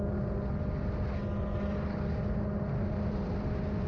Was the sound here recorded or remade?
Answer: recorded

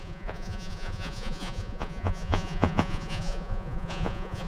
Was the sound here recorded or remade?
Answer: remade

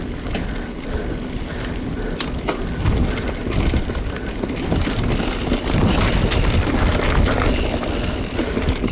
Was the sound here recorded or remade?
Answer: recorded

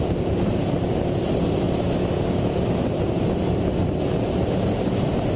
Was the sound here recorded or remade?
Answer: recorded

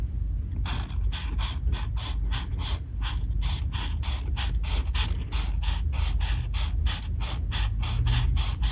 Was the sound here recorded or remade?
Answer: recorded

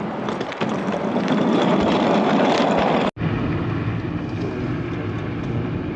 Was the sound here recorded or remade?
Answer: recorded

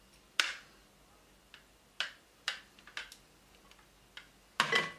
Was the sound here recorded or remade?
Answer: recorded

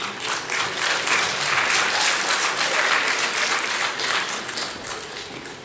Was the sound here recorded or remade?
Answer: recorded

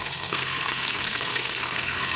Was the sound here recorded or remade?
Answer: remade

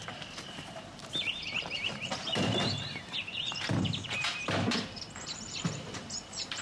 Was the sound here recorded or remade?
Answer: remade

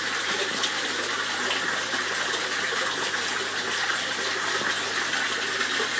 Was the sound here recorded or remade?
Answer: recorded